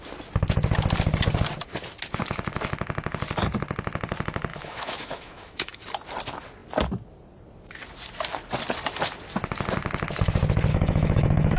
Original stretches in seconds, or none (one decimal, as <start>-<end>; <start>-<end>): 0.0-4.5; 5.8-10.7